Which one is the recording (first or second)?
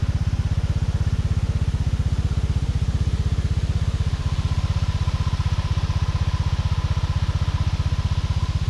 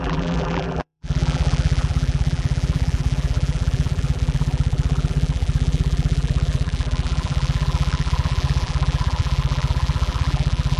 first